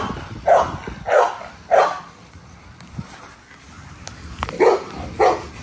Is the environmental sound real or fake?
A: real